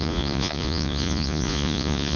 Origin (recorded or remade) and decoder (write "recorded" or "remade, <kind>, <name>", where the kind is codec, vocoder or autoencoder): remade, vocoder, Vocos